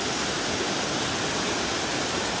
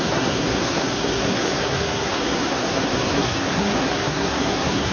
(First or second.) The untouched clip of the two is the first